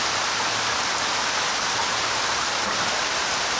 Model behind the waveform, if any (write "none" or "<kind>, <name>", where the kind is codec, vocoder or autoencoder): none